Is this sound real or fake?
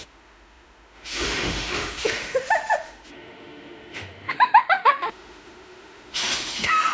fake